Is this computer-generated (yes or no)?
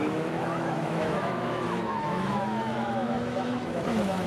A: yes